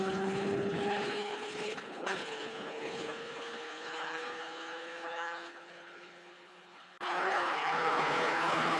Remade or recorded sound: remade